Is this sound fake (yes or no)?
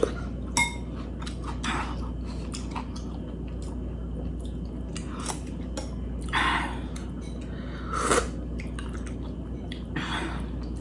no